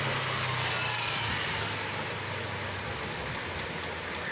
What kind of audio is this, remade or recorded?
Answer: recorded